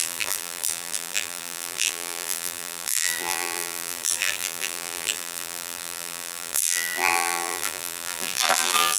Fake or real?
fake